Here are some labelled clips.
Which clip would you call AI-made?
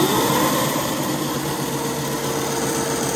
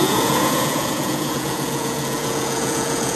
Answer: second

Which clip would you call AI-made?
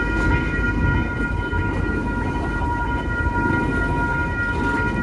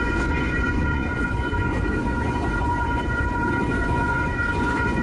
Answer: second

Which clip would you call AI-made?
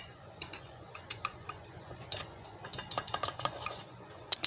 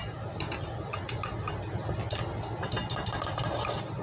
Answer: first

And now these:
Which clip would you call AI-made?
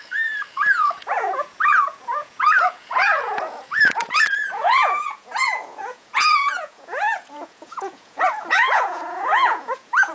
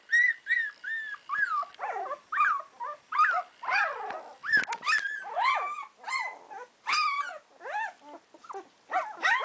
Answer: first